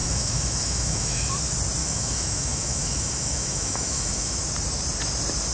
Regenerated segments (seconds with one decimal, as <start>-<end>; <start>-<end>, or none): 0.0-1.3; 1.8-4.4

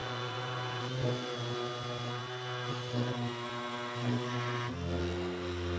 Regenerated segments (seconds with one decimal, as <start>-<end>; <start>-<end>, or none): 0.0-0.9

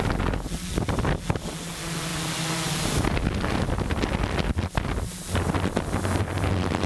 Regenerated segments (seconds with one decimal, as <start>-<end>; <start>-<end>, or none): none

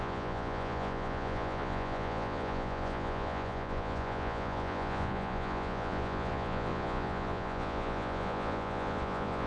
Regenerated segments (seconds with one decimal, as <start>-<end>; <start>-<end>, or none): 0.0-9.5

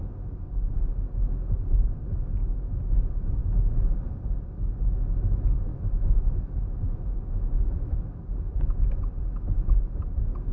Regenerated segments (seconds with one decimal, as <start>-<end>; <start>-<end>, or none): 2.4-2.9; 5.7-8.5

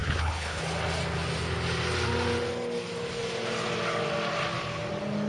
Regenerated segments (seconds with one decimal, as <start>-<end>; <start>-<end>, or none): 0.0-0.6

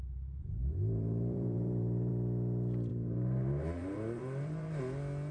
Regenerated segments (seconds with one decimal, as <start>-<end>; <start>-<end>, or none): 0.6-2.1; 2.9-4.8

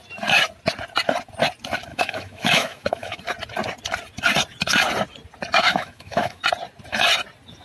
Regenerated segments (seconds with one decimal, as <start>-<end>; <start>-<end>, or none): 1.9-3.2; 5.6-6.4